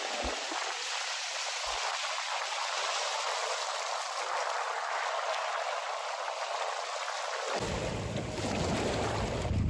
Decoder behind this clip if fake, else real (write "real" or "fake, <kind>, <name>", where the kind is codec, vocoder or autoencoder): real